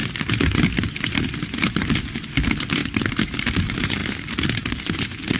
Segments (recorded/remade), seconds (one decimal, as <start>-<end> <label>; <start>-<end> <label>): 0.0-5.4 recorded